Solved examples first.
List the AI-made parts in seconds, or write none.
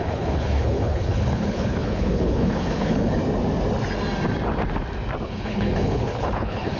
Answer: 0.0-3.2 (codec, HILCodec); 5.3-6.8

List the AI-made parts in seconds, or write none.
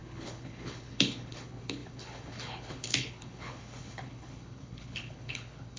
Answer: 0.0-5.8 (codec, HILCodec)